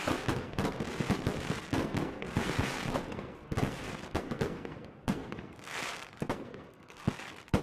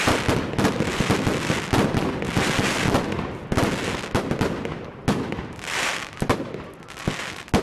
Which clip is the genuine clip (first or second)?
second